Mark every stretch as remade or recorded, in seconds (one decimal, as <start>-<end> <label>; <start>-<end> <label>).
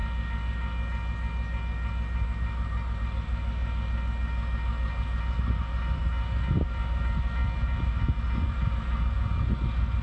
0.0-10.0 recorded